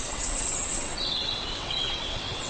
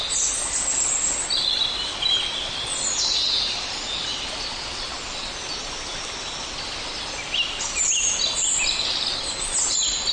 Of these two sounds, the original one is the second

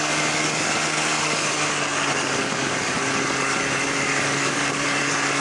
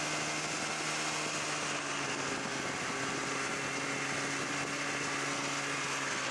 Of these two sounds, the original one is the second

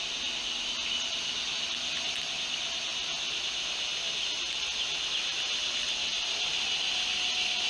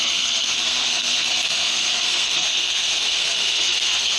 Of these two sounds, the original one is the first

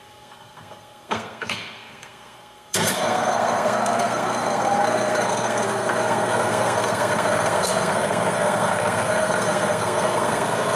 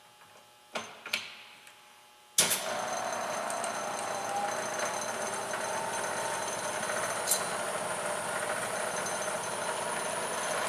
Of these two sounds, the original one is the second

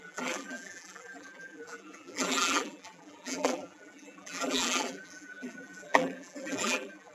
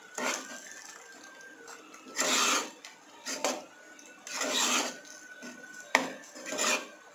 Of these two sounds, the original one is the second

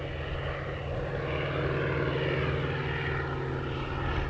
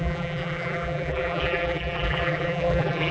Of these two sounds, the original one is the first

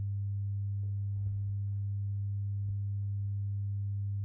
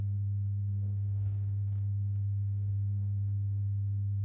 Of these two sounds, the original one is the first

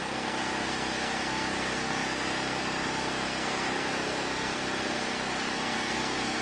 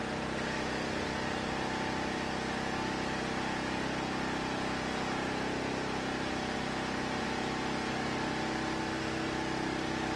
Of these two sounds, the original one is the second